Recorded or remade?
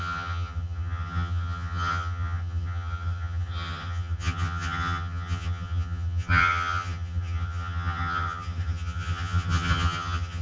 remade